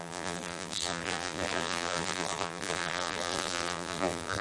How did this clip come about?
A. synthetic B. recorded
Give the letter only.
A